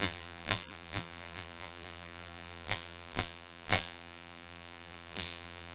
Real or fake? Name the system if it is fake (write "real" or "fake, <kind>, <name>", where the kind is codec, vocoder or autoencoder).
fake, vocoder, BigVGAN v2